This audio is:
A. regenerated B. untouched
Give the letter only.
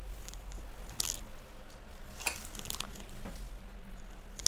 B